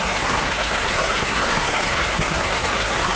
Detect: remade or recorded remade